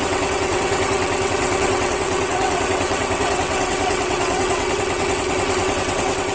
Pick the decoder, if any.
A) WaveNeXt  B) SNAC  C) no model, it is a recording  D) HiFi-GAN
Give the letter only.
A